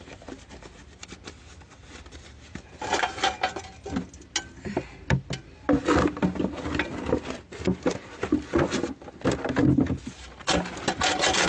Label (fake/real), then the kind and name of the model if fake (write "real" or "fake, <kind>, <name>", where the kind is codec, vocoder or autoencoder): real